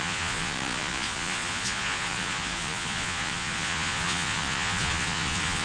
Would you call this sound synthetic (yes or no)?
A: yes